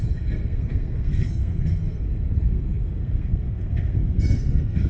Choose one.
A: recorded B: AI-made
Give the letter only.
B